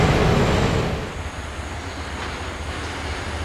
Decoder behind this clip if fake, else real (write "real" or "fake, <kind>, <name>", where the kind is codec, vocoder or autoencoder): real